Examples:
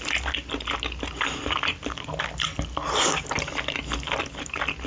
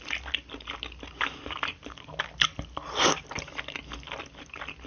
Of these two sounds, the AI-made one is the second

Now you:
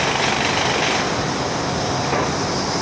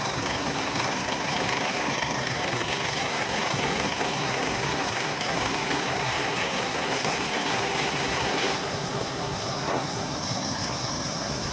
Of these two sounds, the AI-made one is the second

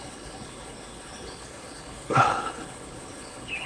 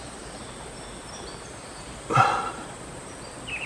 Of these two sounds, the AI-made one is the first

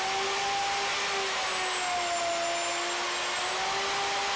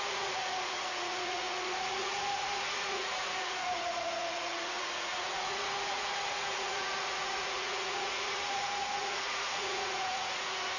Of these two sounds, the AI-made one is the second